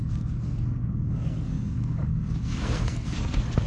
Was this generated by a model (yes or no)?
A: yes